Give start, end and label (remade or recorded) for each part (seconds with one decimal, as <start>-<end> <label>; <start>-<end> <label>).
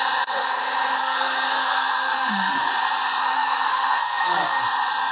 0.0-1.0 recorded; 1.0-2.8 remade; 2.8-3.2 recorded; 3.2-4.6 remade; 4.6-5.1 recorded